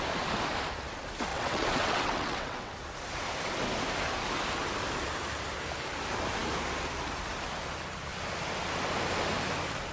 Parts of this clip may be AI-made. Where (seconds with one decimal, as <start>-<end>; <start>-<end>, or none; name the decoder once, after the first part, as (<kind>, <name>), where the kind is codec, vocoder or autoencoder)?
1.3-2.7 (vocoder, WaveNeXt)